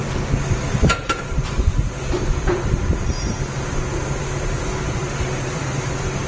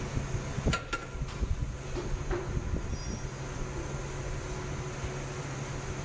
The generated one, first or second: first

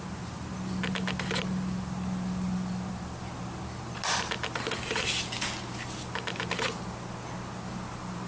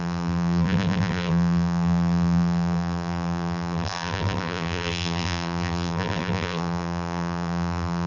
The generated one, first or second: second